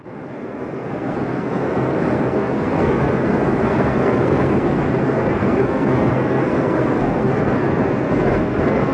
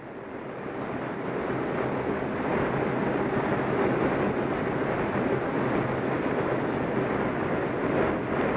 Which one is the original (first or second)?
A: second